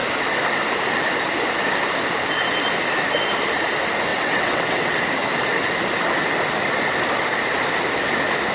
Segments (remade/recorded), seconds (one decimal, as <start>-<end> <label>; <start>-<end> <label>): 0.0-4.1 recorded; 4.1-5.0 remade; 5.0-8.5 recorded